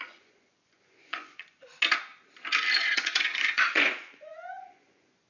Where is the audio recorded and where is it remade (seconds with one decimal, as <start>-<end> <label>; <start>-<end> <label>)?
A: 0.0-1.7 remade; 1.7-2.8 recorded; 2.8-5.3 remade